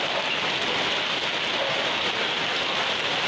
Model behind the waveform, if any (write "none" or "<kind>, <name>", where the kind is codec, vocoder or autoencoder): none